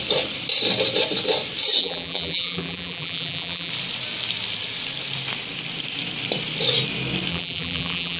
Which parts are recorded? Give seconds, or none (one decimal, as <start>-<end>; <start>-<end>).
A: 0.0-1.8; 3.7-7.3